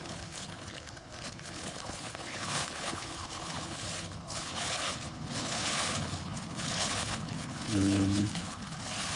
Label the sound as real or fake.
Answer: fake